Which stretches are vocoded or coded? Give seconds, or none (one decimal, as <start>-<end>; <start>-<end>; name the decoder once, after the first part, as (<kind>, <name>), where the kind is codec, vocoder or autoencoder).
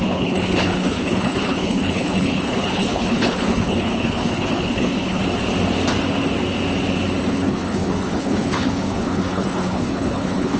0.0-5.2 (codec, HILCodec); 7.3-10.6